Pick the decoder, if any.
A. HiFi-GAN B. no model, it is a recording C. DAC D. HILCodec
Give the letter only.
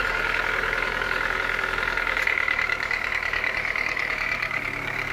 C